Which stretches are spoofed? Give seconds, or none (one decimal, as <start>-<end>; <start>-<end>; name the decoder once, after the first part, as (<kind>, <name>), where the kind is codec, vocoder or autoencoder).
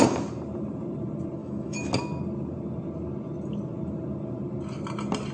1.4-1.9 (autoencoder, DAC-VAE)